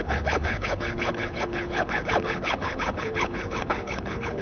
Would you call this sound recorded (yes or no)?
no